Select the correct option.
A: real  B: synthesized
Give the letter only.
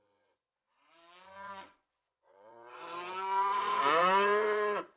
B